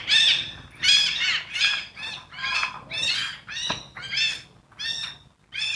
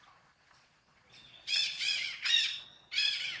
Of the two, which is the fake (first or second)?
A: second